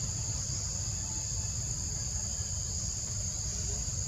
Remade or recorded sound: recorded